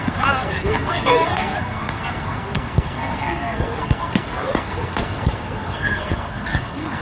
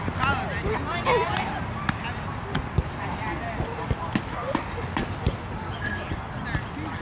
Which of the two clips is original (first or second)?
second